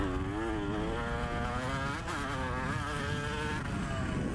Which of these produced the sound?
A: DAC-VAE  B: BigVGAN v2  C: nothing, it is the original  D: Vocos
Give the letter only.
C